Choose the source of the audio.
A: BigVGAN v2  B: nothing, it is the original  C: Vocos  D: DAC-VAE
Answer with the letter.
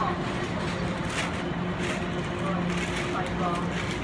B